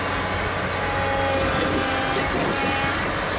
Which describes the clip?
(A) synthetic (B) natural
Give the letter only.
B